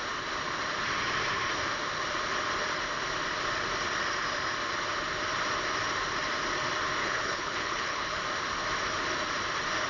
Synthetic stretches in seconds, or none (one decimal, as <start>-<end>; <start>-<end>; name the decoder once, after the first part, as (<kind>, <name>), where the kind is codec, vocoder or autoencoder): 7.0-8.2 (codec, HILCodec)